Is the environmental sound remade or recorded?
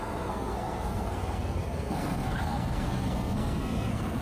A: remade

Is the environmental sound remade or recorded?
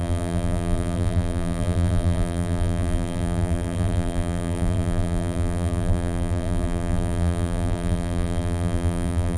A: remade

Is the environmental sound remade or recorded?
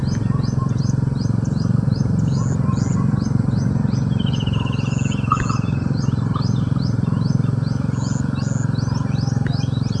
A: recorded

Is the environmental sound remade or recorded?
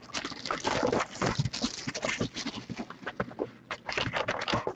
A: recorded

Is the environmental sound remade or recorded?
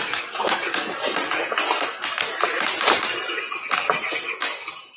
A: recorded